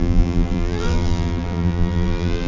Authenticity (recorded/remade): remade